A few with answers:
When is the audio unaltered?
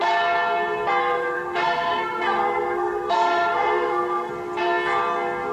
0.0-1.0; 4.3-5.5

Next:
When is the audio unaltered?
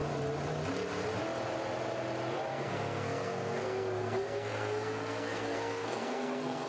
0.0-2.5